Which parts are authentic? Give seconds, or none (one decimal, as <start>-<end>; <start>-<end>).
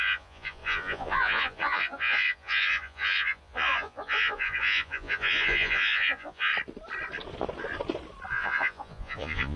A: 6.5-8.3